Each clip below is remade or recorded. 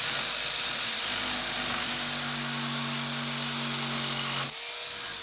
recorded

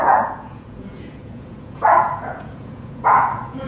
remade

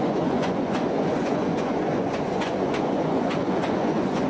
remade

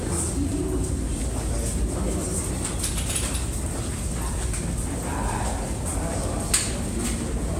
recorded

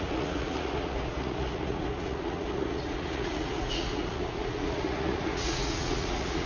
remade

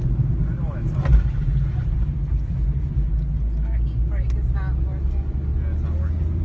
recorded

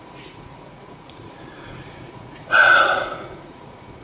remade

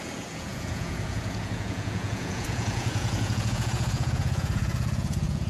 remade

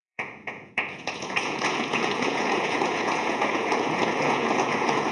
remade